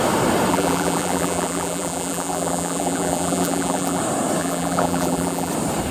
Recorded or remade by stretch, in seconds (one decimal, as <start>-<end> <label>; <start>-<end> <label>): 0.0-0.5 recorded; 0.5-4.0 remade; 4.0-4.4 recorded; 4.4-5.5 remade; 5.5-5.9 recorded